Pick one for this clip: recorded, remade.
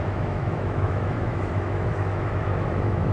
remade